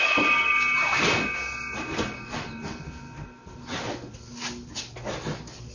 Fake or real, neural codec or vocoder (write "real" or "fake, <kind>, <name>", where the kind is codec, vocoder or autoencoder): real